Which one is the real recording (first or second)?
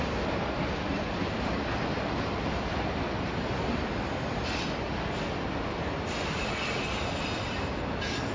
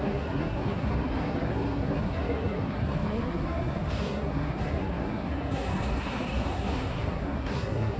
first